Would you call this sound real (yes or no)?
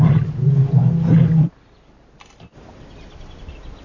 yes